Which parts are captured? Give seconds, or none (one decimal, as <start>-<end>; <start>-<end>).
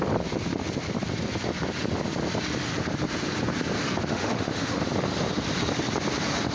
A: 0.0-4.1; 4.8-6.5